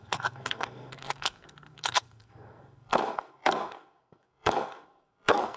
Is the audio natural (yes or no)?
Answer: no